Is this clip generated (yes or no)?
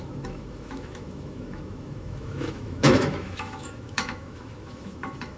yes